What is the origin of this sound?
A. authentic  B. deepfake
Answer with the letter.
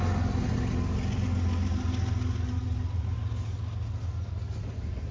A